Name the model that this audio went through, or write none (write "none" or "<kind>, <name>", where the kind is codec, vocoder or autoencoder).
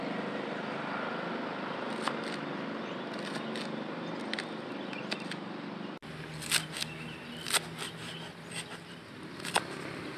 none